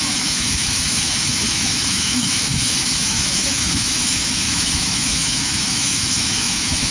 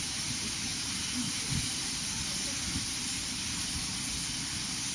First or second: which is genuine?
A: second